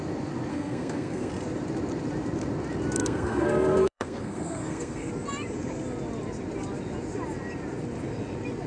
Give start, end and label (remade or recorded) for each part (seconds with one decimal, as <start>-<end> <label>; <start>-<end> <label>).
0.0-0.5 recorded; 0.5-1.3 remade; 1.3-3.0 recorded; 3.0-5.1 remade; 5.1-8.7 recorded